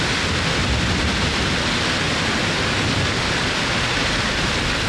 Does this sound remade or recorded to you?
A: recorded